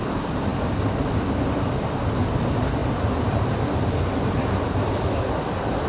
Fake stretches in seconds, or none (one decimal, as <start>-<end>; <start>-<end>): none